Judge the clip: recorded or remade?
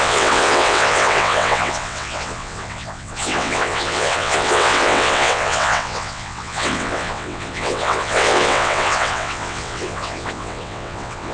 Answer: remade